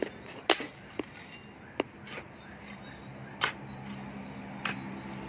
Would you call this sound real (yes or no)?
yes